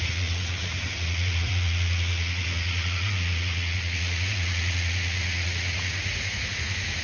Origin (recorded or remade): remade